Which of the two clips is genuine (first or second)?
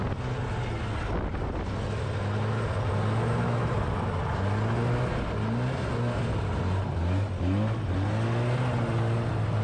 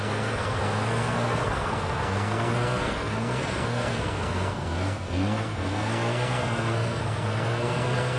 first